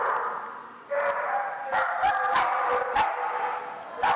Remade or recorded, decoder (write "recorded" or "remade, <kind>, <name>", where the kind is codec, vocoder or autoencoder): recorded